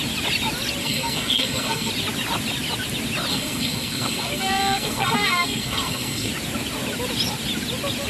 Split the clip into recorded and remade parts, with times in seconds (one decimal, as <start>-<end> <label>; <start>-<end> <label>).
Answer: 0.0-0.8 recorded; 0.8-1.9 remade; 1.9-3.3 recorded; 3.3-6.3 remade; 6.3-8.1 recorded